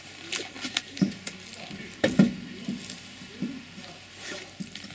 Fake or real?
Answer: real